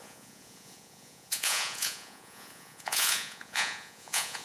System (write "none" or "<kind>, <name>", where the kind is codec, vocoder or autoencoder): vocoder, Vocos